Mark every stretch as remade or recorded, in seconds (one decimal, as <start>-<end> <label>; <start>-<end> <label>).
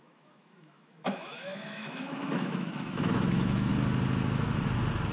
0.0-3.7 remade; 3.7-5.1 recorded